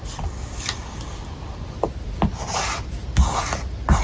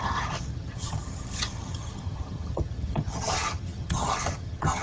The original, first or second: first